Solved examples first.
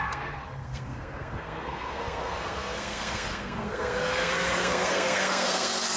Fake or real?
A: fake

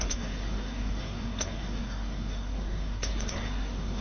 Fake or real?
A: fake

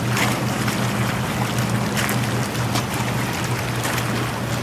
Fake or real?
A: real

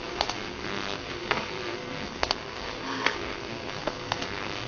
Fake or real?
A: fake